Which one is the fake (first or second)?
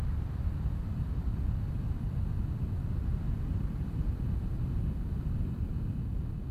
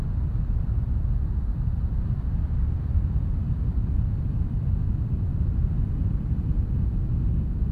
first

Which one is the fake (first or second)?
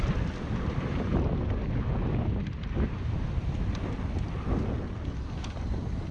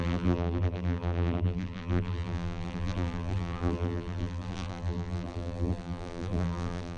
second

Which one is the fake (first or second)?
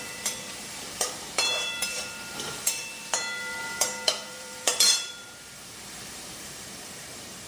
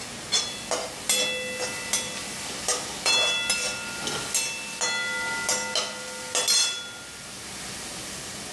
first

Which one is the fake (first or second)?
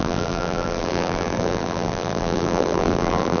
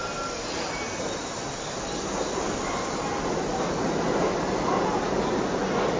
first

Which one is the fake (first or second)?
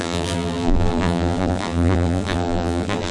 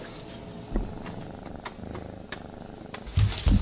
first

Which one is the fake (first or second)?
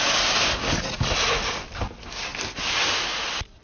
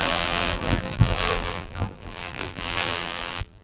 second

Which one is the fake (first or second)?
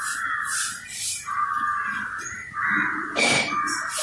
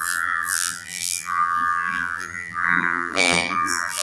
second